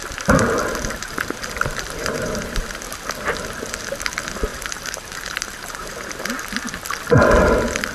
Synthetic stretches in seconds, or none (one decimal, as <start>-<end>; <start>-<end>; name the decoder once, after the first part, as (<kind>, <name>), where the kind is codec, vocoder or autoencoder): 2.0-2.6 (vocoder, BigVGAN v2); 4.5-6.1

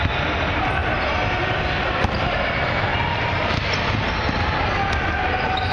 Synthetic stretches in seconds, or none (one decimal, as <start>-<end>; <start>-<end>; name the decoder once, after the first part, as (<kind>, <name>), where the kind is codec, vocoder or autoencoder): 2.9-4.1 (vocoder, BigVGAN v2)